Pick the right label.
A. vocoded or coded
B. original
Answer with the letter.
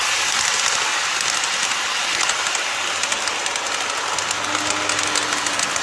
B